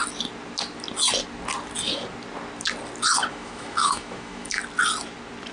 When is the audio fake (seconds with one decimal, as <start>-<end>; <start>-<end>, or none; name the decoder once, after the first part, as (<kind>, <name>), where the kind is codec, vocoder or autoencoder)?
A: 3.3-4.6 (autoencoder, DAC-VAE)